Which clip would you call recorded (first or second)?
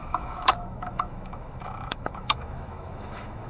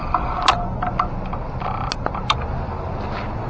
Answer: second